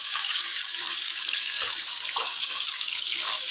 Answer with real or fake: fake